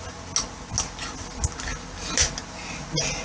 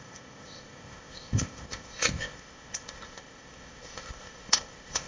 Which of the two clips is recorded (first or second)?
first